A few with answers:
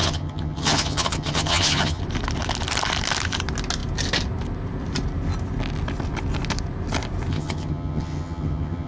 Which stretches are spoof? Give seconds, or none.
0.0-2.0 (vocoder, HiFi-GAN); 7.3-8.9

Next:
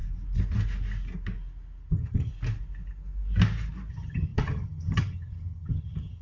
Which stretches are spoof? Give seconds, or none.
1.9-2.3 (vocoder, HiFi-GAN); 3.9-6.2

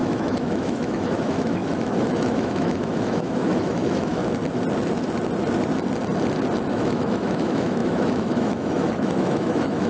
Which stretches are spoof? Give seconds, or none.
0.0-4.2 (autoencoder, DAC-VAE); 6.7-9.9

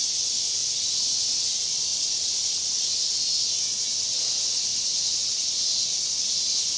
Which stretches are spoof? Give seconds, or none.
0.6-1.5 (vocoder, Vocos); 1.9-2.9; 4.7-5.2

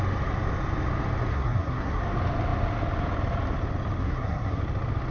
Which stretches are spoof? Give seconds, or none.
1.3-2.0 (codec, SNAC); 4.0-4.6

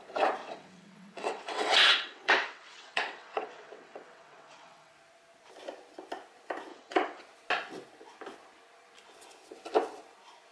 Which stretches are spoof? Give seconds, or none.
0.4-4.9 (vocoder, WaveNeXt); 6.7-7.2

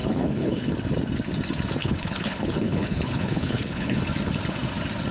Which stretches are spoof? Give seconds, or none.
0.0-0.7 (codec, HILCodec); 1.8-4.0